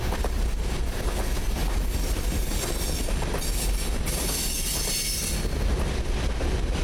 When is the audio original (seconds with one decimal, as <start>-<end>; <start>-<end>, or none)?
0.0-6.8